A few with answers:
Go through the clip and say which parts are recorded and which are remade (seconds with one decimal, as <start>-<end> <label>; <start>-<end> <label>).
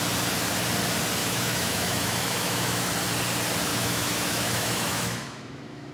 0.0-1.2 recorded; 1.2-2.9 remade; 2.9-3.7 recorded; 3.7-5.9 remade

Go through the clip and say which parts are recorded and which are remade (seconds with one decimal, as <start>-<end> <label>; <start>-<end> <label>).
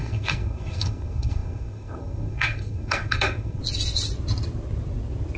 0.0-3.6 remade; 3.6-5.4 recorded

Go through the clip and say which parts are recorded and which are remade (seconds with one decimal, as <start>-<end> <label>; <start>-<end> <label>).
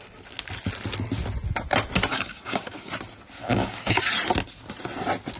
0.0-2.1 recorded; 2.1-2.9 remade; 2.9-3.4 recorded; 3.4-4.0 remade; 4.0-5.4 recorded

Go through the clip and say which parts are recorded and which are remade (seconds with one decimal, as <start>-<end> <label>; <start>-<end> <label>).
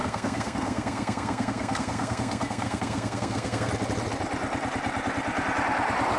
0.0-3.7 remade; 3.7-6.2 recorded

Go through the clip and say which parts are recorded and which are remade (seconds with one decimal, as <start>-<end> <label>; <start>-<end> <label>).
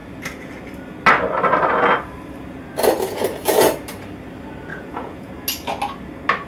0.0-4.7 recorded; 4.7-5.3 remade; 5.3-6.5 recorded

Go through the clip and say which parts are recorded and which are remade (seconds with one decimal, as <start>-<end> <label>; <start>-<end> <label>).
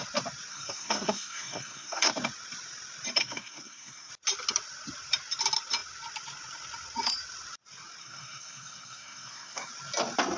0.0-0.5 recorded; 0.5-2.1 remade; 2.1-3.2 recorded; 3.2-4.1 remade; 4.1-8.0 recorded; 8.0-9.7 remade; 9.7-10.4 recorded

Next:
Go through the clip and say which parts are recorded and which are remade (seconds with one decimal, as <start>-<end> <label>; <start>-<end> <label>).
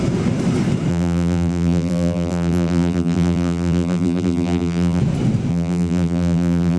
0.0-0.9 recorded; 0.9-5.0 remade; 5.0-5.5 recorded; 5.5-6.8 remade